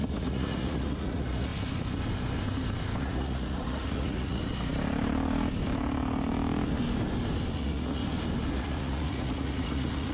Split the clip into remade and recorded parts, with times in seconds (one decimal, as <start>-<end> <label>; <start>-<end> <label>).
0.0-1.5 remade; 1.5-3.0 recorded; 3.0-4.4 remade; 4.4-7.5 recorded; 7.5-8.0 remade; 8.0-8.5 recorded; 8.5-10.1 remade